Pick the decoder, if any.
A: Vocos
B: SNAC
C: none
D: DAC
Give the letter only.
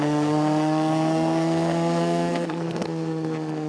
B